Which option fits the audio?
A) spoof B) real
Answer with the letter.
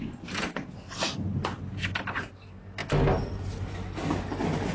B